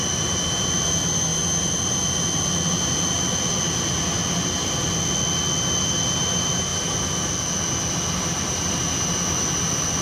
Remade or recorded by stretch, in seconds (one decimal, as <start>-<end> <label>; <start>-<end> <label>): 0.0-10.0 recorded